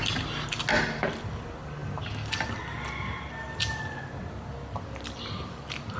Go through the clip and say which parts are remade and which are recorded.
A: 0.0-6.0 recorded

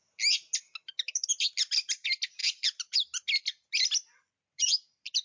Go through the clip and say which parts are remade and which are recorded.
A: 0.0-5.2 recorded

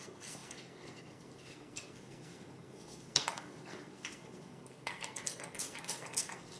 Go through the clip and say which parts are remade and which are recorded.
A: 0.0-6.6 remade

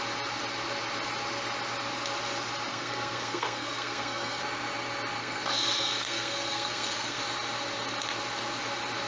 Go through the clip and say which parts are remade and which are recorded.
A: 0.0-2.7 recorded; 2.7-4.4 remade; 4.4-5.2 recorded; 5.2-7.2 remade; 7.2-9.1 recorded

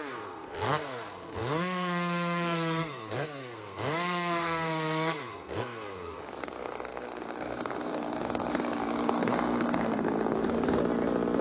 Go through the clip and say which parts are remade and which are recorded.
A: 0.0-10.8 remade; 10.8-11.4 recorded